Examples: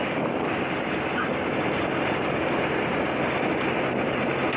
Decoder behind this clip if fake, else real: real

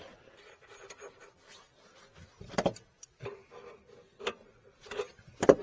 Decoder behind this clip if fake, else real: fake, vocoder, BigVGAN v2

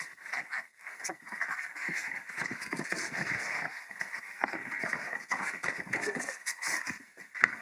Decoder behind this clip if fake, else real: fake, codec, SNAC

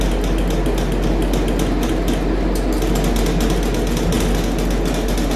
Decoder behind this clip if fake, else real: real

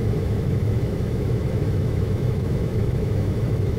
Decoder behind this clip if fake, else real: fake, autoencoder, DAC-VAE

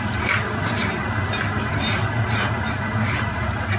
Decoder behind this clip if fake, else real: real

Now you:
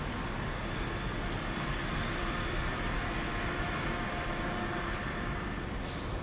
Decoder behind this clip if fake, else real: real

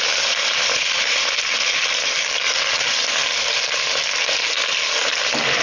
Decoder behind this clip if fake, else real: fake, vocoder, BigVGAN v2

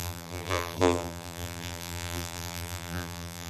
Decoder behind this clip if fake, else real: fake, vocoder, BigVGAN v2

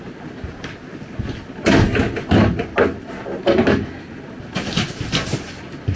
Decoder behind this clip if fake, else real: real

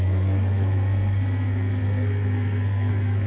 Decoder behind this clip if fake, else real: fake, codec, SNAC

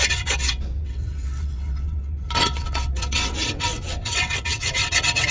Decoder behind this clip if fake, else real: fake, vocoder, WaveNeXt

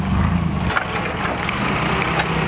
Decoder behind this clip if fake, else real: real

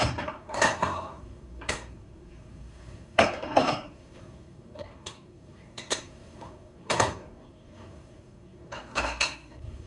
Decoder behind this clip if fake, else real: fake, codec, SNAC